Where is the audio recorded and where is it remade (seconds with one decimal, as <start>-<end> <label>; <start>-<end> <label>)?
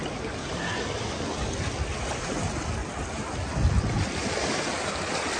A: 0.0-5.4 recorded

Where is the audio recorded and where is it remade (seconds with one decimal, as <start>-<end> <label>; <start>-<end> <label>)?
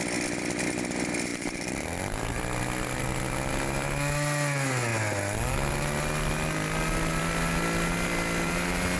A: 0.0-1.3 recorded; 1.3-2.4 remade; 2.4-9.0 recorded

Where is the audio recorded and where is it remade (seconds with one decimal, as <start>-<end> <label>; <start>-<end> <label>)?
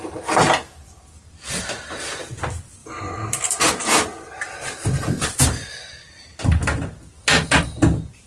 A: 0.0-6.6 remade; 6.6-7.6 recorded; 7.6-8.3 remade